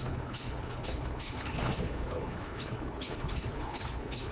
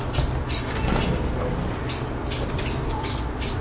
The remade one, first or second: first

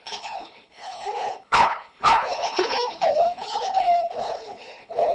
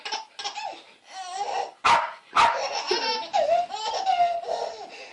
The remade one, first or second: first